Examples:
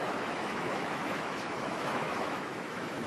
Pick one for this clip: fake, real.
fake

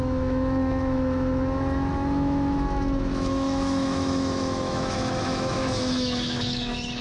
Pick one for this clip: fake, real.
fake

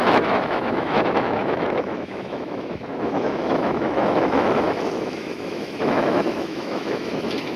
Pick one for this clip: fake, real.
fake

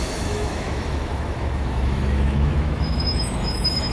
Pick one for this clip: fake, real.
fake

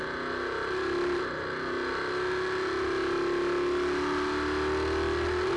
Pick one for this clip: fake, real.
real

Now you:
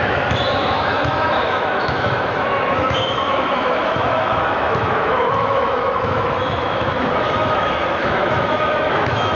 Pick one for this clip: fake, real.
fake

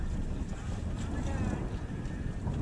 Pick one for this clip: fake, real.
real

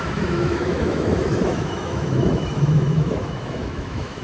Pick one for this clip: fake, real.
fake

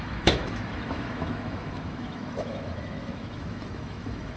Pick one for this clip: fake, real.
fake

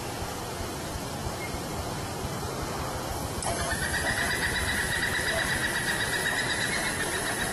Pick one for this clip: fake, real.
real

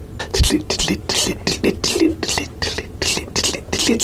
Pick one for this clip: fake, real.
real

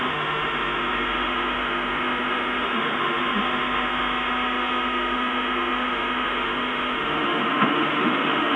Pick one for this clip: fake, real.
fake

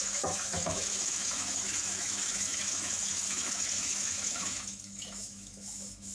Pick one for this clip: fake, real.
fake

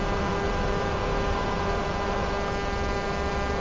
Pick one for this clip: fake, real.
fake